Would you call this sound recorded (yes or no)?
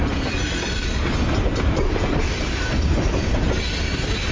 yes